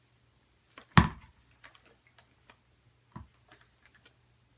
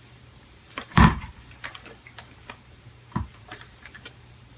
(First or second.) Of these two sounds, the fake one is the second